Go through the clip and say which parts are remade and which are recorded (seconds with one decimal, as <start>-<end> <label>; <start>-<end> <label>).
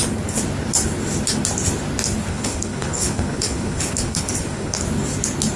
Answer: 0.0-2.3 recorded; 2.3-4.8 remade; 4.8-5.6 recorded